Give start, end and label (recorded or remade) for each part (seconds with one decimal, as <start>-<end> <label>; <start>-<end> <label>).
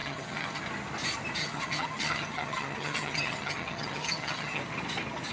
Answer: 0.0-0.6 remade; 0.6-1.4 recorded; 1.4-4.6 remade; 4.6-5.3 recorded